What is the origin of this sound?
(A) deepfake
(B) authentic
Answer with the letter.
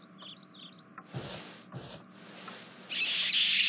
B